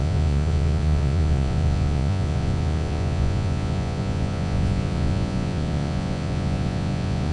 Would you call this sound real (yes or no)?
no